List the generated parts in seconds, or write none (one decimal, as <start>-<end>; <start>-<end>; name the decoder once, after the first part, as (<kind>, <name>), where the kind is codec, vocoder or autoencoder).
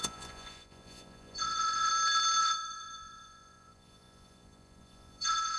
0.0-1.9 (vocoder, Vocos); 2.4-5.6